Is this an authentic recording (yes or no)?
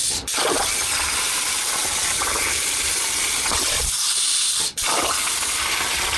yes